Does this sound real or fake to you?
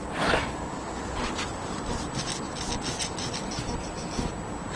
real